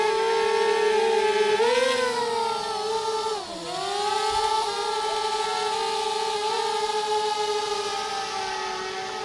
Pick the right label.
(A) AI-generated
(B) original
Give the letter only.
B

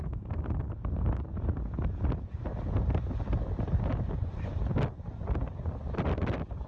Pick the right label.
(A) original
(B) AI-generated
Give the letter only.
A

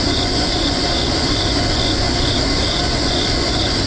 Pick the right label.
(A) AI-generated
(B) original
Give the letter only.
A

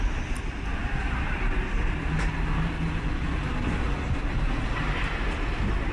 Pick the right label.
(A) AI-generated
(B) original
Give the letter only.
B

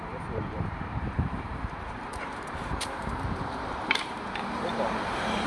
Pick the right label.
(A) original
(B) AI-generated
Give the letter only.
B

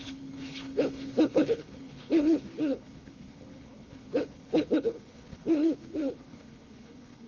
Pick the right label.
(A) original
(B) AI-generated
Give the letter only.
B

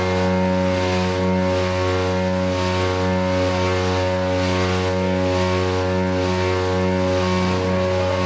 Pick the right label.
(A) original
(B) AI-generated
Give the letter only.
A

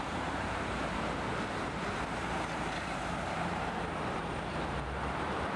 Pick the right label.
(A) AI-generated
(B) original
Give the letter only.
A